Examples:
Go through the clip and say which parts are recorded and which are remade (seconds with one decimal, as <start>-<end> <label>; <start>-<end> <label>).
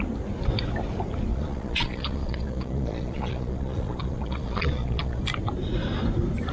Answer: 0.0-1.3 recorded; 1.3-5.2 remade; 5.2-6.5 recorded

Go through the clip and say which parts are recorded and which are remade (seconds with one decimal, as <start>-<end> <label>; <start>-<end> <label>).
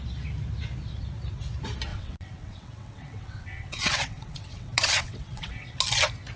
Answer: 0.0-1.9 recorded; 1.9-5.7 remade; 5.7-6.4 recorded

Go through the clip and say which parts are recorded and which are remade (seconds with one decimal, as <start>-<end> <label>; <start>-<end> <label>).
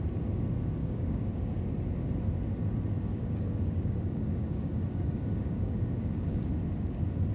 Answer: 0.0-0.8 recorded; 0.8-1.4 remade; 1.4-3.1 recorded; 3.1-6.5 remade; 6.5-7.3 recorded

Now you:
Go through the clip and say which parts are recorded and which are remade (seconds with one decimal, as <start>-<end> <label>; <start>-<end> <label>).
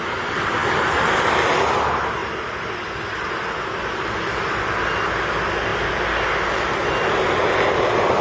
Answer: 0.0-8.2 recorded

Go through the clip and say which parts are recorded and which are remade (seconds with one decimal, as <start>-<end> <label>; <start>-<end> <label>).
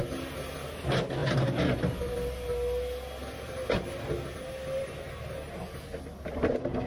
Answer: 0.0-6.9 recorded